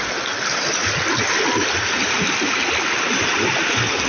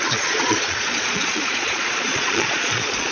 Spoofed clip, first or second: second